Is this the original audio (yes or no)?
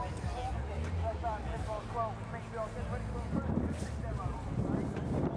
yes